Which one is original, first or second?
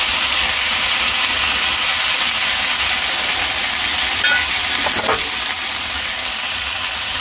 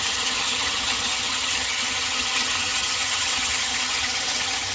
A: first